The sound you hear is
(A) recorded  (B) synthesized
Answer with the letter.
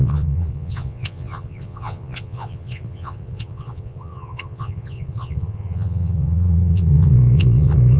B